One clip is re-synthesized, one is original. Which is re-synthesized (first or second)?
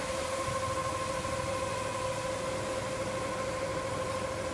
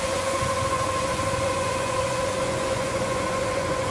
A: second